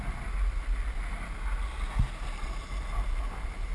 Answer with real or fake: real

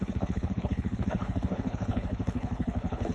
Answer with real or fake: fake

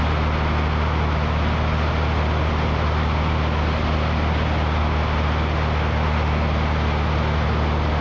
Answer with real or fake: real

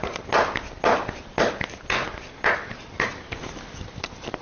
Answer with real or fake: real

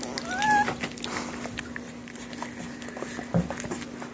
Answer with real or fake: real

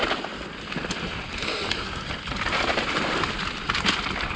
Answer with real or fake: real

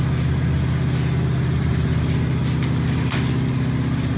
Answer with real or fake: real